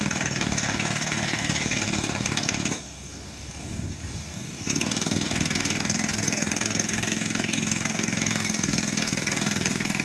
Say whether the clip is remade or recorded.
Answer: remade